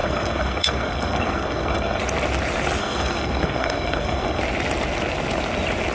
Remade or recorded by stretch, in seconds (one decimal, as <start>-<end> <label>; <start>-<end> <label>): 0.0-2.0 remade; 2.0-2.8 recorded; 2.8-4.4 remade; 4.4-5.9 recorded

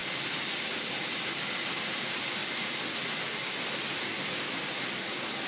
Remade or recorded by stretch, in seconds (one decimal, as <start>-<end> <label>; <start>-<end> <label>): 0.0-5.5 recorded

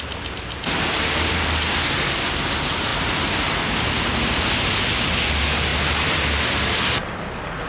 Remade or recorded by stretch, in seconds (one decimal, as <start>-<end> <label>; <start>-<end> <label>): 0.0-7.7 recorded